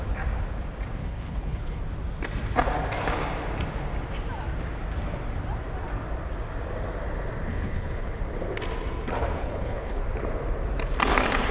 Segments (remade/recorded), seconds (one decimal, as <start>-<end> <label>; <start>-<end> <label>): 0.0-1.0 recorded; 1.0-1.8 remade; 1.8-7.5 recorded; 7.5-8.2 remade; 8.2-9.4 recorded; 9.4-10.0 remade; 10.0-11.5 recorded